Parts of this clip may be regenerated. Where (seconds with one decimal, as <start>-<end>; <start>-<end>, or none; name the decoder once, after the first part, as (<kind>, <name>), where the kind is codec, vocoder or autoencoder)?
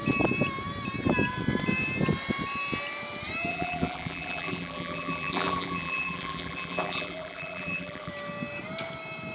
3.5-8.1 (vocoder, BigVGAN v2)